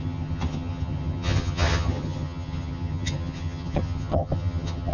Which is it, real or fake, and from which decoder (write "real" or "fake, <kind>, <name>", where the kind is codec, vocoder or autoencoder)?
fake, vocoder, HiFi-GAN